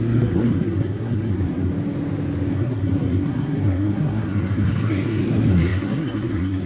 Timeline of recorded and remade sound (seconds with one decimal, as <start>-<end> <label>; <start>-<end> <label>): 0.0-1.7 remade; 1.7-2.5 recorded; 2.5-6.7 remade